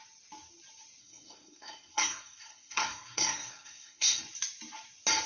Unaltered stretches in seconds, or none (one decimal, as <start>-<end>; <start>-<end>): 0.0-1.0; 4.2-5.3